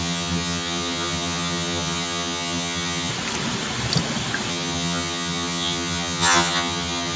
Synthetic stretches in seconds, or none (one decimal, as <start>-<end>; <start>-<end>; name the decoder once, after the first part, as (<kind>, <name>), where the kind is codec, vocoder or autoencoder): 0.0-3.1 (vocoder, HiFi-GAN); 4.5-7.2